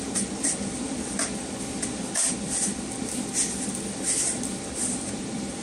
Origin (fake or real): real